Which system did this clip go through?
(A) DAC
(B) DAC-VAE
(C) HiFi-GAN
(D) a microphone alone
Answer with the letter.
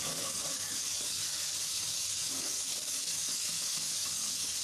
A